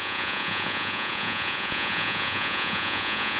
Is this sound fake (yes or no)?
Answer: yes